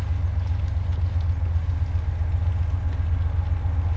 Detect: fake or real real